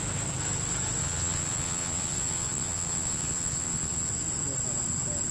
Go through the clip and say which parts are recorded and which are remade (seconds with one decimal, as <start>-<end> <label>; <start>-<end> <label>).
0.0-1.0 recorded; 1.0-4.1 remade; 4.1-5.3 recorded